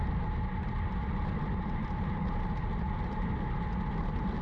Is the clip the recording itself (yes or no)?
yes